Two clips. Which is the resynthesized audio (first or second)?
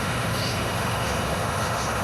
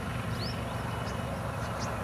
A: first